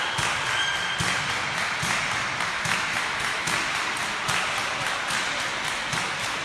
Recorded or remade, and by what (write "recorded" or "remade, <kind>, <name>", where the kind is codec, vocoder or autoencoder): recorded